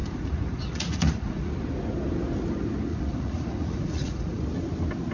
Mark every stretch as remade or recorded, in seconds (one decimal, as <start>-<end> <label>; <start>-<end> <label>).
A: 0.0-1.5 remade; 1.5-2.9 recorded; 2.9-4.4 remade; 4.4-5.1 recorded